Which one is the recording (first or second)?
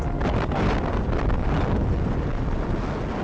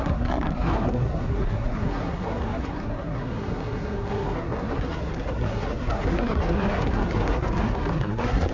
first